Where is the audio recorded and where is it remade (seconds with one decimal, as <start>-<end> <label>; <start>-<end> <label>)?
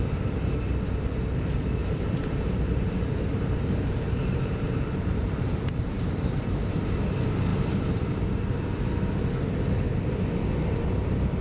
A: 0.0-1.8 recorded; 1.8-6.6 remade; 6.6-7.5 recorded; 7.5-8.7 remade; 8.7-11.4 recorded